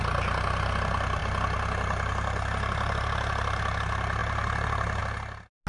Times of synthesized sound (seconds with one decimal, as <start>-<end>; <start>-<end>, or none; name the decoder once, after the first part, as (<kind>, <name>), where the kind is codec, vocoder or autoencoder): none